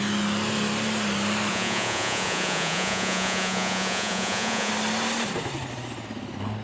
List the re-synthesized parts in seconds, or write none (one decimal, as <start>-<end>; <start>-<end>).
1.5-4.7